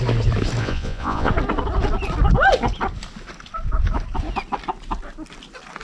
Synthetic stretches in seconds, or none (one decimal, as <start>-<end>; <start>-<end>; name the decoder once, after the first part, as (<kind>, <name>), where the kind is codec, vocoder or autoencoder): 0.6-1.3 (vocoder, Vocos)

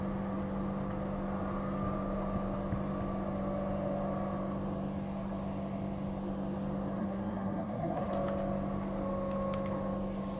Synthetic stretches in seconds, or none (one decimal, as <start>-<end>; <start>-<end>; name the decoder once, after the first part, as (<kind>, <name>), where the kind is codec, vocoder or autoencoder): 7.0-8.1 (codec, SNAC)

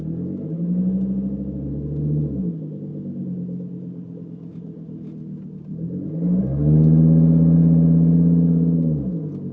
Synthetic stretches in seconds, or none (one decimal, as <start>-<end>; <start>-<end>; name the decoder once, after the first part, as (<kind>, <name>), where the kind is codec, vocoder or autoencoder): none

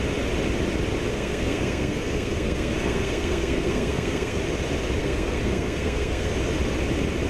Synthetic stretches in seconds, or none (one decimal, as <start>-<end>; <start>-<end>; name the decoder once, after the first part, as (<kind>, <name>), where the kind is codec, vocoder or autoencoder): 1.1-4.4 (codec, SNAC); 5.0-6.3

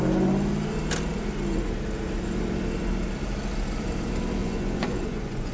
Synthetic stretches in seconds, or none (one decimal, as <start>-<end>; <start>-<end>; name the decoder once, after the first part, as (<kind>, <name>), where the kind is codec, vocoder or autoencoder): 4.4-5.5 (vocoder, Vocos)

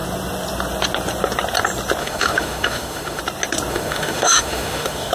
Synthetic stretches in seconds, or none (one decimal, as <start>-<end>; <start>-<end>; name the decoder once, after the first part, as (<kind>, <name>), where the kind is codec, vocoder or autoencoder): 2.0-3.2 (autoencoder, DAC-VAE); 3.7-5.1